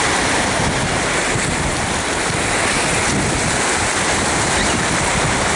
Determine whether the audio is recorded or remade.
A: recorded